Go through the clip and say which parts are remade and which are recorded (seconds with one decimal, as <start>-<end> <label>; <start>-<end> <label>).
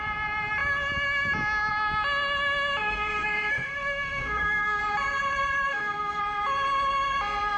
0.0-2.8 recorded; 2.8-4.8 remade; 4.8-5.7 recorded; 5.7-6.2 remade; 6.2-7.6 recorded